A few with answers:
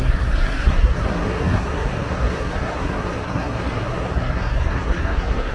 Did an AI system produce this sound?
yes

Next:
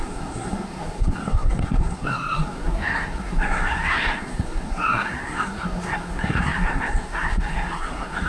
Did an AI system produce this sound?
yes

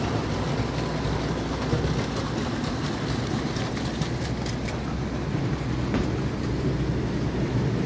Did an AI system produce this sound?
no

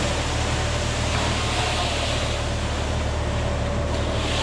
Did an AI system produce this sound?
no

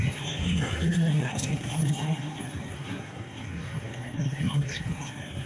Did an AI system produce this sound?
yes